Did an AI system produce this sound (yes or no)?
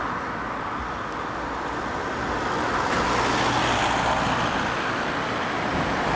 no